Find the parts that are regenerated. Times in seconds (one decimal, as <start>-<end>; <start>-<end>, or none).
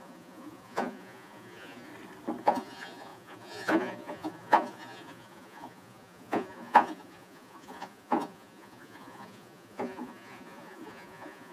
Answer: 0.0-1.9; 2.4-11.5